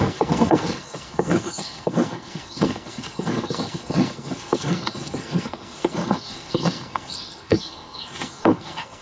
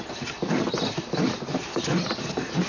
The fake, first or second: first